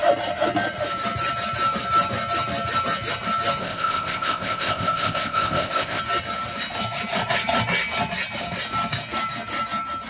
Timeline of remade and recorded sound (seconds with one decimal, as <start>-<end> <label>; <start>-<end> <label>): 0.0-3.6 recorded; 3.6-6.0 remade; 6.0-10.1 recorded